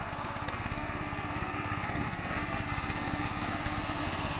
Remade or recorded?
remade